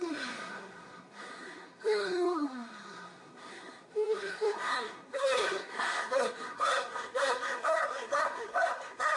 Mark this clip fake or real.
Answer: fake